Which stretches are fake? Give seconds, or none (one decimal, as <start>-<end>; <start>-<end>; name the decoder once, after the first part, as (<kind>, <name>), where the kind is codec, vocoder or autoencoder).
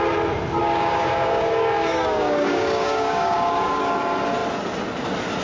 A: 0.6-3.8 (codec, DAC)